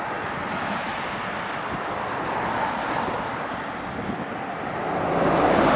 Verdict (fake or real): real